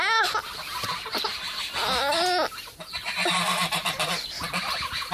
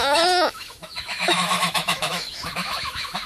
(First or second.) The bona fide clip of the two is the first